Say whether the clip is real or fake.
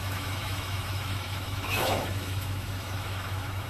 fake